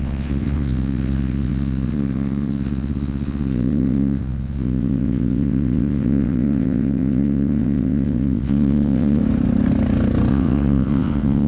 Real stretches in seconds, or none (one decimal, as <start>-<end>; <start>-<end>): 9.2-10.3